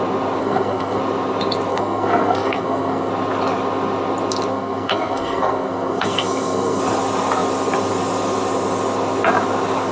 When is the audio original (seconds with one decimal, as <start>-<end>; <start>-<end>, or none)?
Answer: 0.0-0.4; 1.0-1.7; 3.1-4.5; 6.8-9.9